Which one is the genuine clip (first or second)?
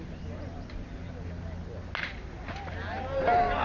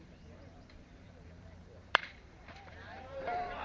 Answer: first